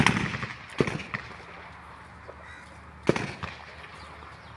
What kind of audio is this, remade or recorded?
recorded